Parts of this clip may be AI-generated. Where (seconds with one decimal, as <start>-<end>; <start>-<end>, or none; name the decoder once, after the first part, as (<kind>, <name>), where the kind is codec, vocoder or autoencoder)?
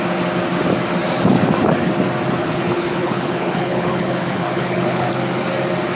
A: 2.4-5.1 (codec, HILCodec)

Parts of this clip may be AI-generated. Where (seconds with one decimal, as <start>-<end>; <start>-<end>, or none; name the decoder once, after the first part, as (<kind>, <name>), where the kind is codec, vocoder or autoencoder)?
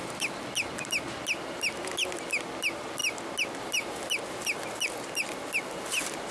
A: none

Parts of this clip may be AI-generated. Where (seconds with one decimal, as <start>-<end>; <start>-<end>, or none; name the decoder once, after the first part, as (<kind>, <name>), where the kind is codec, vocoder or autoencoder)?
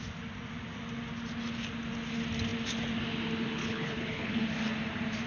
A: 3.6-4.3 (codec, HILCodec)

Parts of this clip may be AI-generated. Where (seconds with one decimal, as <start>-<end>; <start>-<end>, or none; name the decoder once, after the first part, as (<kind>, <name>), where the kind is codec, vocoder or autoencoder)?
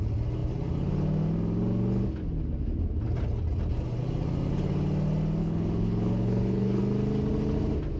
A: 5.4-6.8 (codec, HILCodec)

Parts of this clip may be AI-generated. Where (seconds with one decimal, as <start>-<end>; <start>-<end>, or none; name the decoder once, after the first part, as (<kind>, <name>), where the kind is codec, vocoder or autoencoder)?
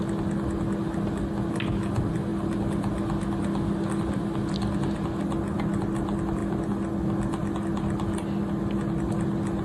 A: none